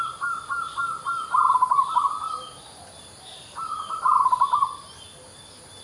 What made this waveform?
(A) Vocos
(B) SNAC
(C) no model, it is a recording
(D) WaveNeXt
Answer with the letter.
C